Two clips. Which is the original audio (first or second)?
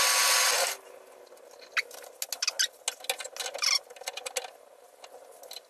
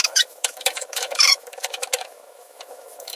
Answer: first